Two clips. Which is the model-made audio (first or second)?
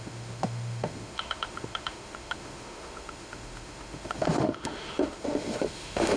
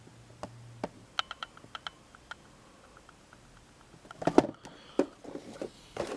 first